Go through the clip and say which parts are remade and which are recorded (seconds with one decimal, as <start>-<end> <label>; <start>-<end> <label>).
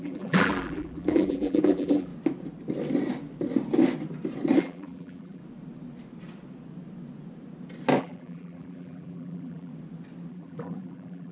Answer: 0.0-2.1 remade; 2.1-4.6 recorded; 4.6-5.4 remade; 5.4-8.0 recorded; 8.0-9.7 remade; 9.7-10.3 recorded; 10.3-11.3 remade